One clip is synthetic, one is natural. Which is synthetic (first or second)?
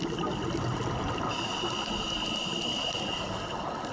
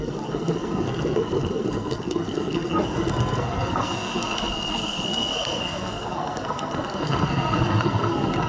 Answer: second